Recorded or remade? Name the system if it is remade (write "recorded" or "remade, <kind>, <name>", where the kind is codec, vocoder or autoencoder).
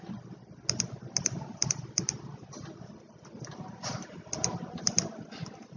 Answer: recorded